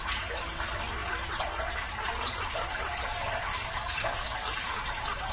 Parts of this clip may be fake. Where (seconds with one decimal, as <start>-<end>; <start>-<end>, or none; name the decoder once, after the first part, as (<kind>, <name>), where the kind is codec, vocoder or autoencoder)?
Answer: 3.5-4.8 (codec, DAC)